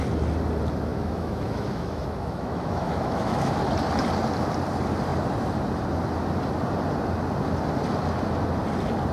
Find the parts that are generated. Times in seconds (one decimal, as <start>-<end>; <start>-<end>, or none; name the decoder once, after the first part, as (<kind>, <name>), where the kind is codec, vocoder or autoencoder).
0.9-3.6 (autoencoder, DAC-VAE)